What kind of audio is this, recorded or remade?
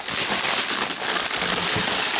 recorded